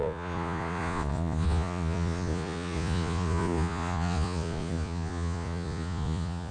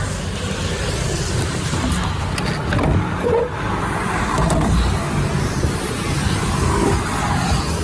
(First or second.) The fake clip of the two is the first